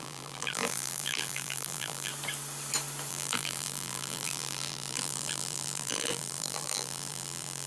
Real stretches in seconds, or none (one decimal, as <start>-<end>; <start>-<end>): 2.1-3.1